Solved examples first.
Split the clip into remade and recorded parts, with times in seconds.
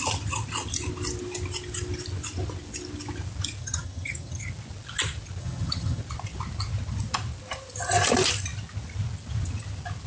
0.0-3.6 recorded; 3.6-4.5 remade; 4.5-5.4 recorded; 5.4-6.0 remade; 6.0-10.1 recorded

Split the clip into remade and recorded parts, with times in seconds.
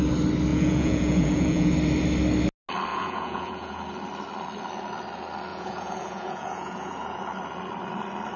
0.0-0.5 recorded; 0.5-1.7 remade; 1.7-2.9 recorded; 2.9-3.8 remade; 3.8-5.5 recorded; 5.5-7.2 remade; 7.2-8.4 recorded